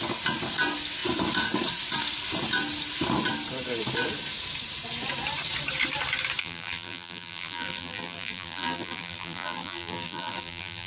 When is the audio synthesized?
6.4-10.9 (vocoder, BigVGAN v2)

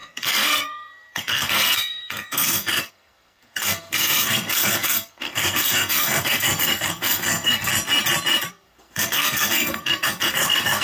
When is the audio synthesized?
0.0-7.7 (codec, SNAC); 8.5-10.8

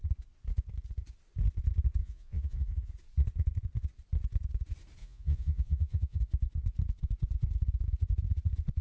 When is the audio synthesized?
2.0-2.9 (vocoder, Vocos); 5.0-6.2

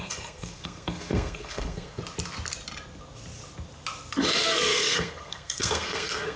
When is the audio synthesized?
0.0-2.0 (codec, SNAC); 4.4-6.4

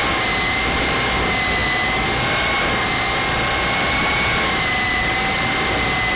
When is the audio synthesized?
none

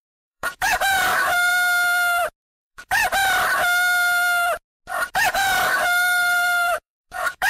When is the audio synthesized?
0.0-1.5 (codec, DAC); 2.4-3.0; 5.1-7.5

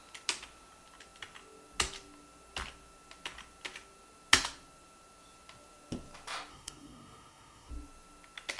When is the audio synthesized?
6.5-7.7 (codec, SNAC)